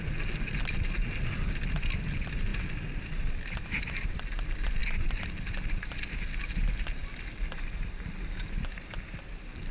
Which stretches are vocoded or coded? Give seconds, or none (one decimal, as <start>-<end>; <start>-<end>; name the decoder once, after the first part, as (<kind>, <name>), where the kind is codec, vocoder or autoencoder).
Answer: none